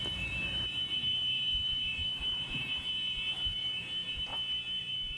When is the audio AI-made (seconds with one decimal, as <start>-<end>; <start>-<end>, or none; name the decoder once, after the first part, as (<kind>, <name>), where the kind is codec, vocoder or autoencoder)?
0.0-4.3 (vocoder, BigVGAN v2); 4.8-5.2